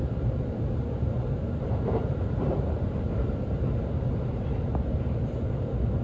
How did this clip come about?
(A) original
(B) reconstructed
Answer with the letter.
B